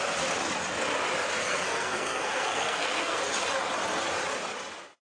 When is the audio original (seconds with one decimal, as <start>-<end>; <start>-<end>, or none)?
0.0-1.4; 3.2-5.1